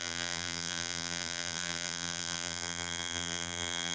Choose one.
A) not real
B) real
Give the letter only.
A